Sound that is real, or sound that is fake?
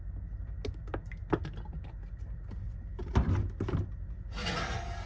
real